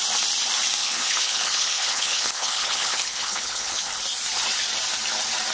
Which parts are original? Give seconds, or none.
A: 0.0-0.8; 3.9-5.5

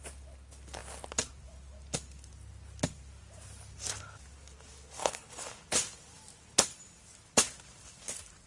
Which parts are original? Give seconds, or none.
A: 0.0-5.0; 5.5-8.5

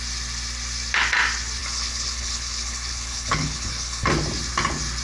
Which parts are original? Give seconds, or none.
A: 0.0-1.6; 4.1-5.0

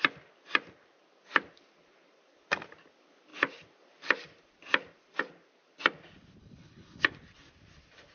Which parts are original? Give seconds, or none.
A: 0.0-6.4; 7.0-8.1

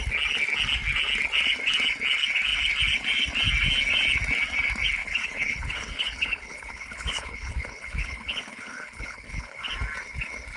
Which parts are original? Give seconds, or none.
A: 0.0-5.0; 9.7-10.6

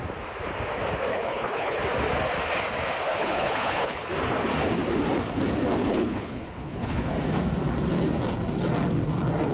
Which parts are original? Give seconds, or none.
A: 0.0-1.1; 1.8-3.2; 4.1-5.8; 7.1-9.5

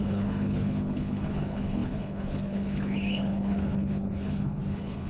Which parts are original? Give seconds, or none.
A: none